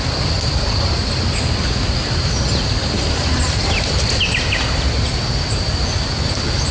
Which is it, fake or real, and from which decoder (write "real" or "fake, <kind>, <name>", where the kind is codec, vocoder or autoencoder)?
real